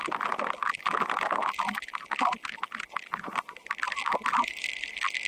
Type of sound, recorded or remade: recorded